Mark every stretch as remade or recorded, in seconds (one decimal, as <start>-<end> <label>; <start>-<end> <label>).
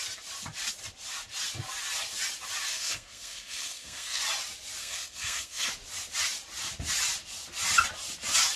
0.0-2.7 recorded; 2.7-4.2 remade; 4.2-4.8 recorded; 4.8-5.7 remade; 5.7-8.6 recorded